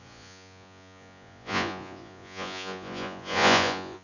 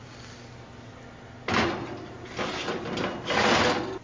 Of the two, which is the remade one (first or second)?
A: first